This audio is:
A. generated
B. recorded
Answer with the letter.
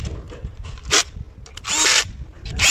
A